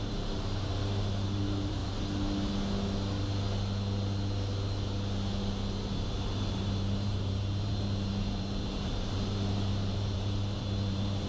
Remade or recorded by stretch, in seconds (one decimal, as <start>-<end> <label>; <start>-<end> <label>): 0.0-1.8 remade; 1.8-6.5 recorded; 6.5-11.3 remade